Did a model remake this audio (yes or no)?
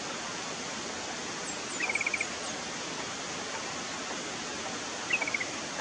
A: no